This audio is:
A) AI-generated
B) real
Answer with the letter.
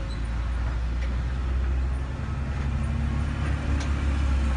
B